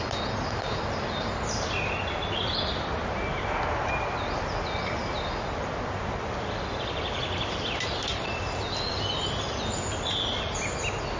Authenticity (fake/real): real